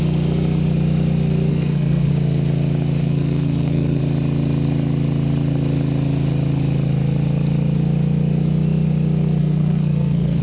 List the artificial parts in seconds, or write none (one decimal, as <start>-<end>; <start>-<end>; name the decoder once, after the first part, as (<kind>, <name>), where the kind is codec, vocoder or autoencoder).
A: 1.5-2.1 (codec, SNAC); 3.0-4.0; 9.4-10.4